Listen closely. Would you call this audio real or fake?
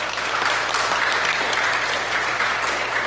real